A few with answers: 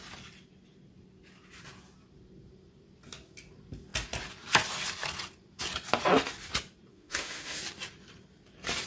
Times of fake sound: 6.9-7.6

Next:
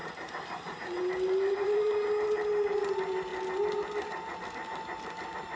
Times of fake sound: 0.0-1.0

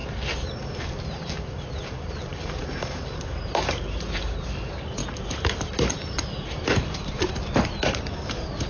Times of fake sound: 0.0-8.7

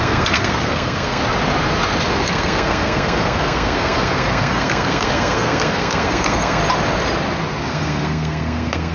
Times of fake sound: 0.0-1.2; 2.1-6.6; 7.7-8.9